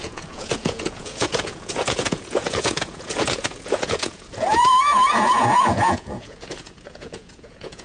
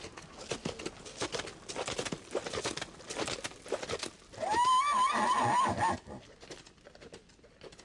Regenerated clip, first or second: first